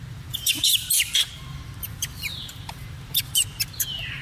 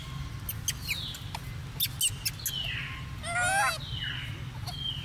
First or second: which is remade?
first